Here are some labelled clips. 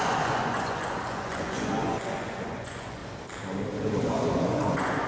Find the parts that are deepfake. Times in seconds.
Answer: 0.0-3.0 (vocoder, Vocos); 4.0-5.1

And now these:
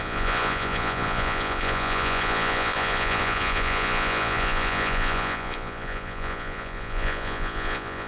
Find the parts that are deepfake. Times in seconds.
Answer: 0.0-8.1 (vocoder, Vocos)